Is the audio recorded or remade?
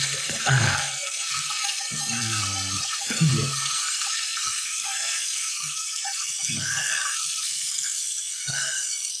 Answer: remade